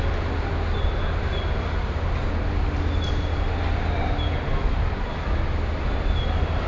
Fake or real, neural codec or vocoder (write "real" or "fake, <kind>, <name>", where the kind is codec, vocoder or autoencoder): real